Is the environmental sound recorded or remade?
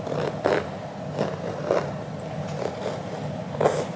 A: recorded